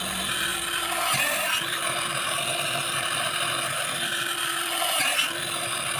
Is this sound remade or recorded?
recorded